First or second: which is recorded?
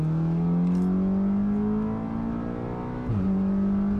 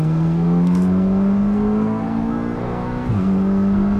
first